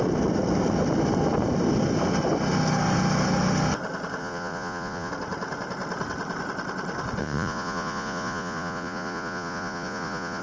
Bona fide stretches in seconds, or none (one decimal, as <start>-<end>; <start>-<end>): 0.0-4.2; 5.1-7.2